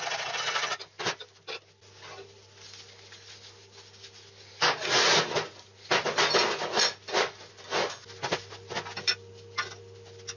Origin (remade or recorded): recorded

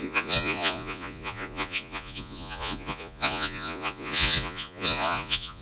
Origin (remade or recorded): remade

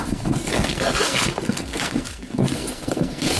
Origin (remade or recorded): remade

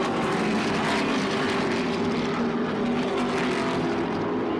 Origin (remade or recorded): recorded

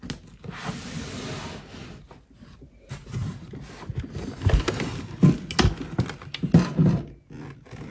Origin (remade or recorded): recorded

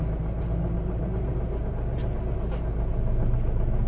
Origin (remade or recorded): recorded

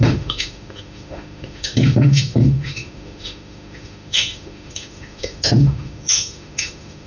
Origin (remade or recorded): remade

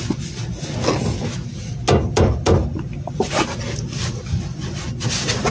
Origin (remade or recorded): recorded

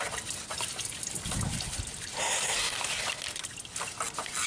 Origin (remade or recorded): recorded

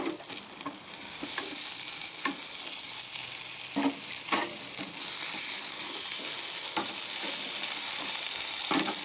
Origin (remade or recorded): recorded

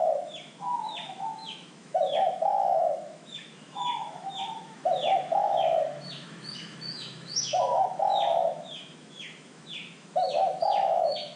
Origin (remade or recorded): remade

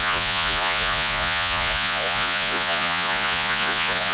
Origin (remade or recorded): remade